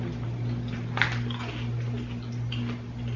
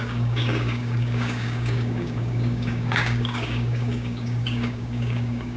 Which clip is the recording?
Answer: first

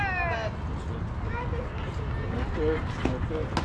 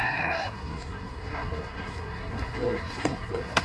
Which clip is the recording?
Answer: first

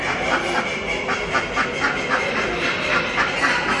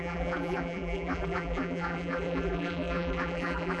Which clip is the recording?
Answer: first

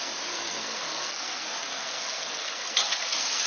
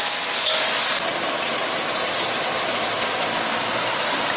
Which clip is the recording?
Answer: second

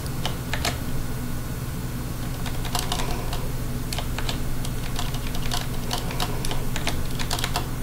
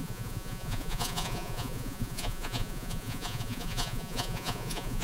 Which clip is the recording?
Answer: first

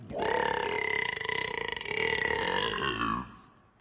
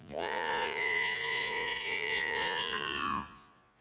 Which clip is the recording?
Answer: first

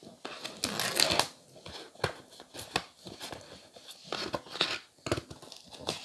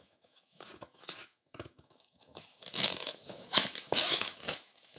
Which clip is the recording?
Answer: first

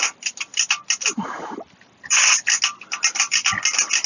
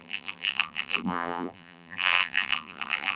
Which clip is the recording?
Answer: first